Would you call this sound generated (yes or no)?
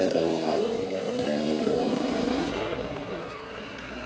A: yes